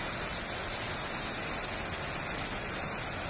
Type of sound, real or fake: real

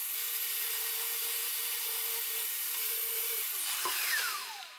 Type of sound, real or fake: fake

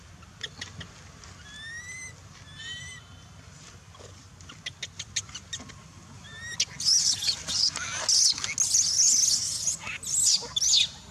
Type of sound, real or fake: real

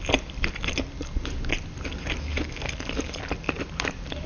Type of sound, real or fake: real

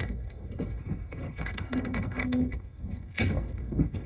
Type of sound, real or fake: fake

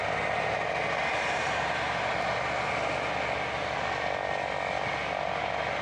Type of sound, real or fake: real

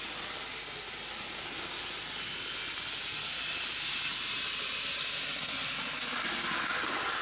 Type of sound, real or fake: real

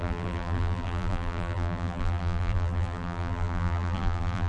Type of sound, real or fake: fake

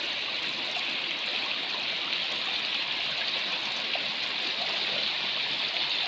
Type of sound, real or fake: real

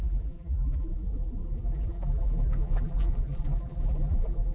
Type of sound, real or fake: fake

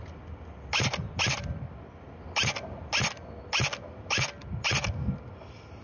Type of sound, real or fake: real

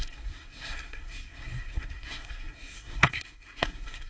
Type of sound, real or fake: fake